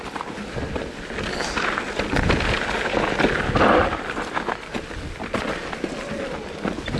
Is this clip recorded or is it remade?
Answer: recorded